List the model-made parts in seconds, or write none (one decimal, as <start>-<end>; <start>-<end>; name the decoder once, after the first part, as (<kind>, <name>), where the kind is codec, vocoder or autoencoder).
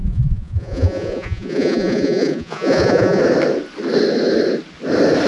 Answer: 0.0-3.2 (vocoder, Vocos)